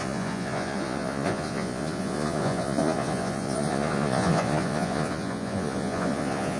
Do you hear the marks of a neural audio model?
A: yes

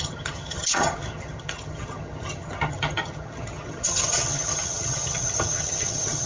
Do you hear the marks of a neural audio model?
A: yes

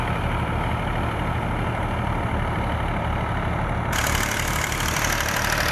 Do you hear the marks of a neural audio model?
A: no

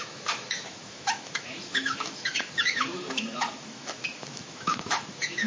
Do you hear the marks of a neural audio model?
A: yes